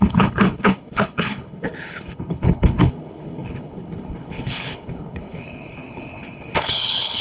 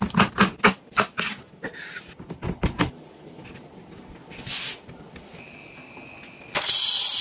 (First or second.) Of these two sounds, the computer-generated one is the first